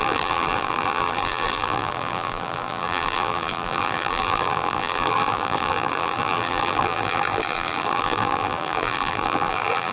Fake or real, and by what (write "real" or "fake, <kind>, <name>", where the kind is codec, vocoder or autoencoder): fake, vocoder, BigVGAN v2